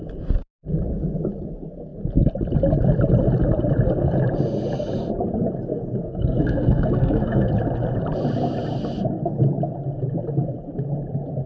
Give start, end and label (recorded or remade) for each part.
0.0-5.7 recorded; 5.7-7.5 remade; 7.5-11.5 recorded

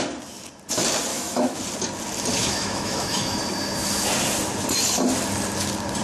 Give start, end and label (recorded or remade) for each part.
0.0-1.1 recorded; 1.1-1.6 remade; 1.6-2.4 recorded; 2.4-3.4 remade; 3.4-6.0 recorded

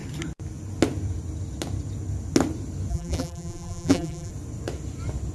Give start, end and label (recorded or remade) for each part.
0.0-2.9 recorded; 2.9-4.3 remade; 4.3-5.3 recorded